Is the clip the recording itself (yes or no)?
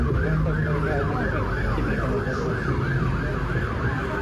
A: yes